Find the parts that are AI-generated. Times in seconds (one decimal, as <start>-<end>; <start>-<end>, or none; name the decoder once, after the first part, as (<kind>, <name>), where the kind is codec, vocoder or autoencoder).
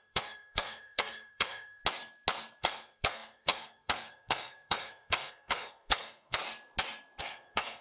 0.0-1.8 (codec, SNAC); 2.6-6.4; 7.2-7.8